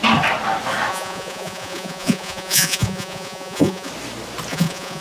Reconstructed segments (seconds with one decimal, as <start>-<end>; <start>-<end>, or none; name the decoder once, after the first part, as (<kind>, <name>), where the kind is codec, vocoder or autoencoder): 0.9-3.9 (vocoder, Vocos); 4.5-5.0